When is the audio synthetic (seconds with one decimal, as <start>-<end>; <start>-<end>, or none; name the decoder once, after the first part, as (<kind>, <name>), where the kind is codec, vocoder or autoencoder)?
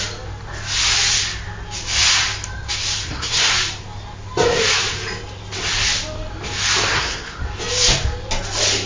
3.0-3.5 (codec, SNAC); 6.9-7.4